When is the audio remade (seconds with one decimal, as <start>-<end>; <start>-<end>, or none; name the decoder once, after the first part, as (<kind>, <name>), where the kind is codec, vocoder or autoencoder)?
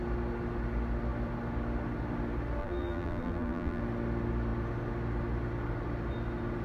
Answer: 2.6-3.8 (vocoder, BigVGAN v2)